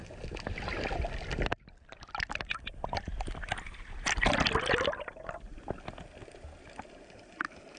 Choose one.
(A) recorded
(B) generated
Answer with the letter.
A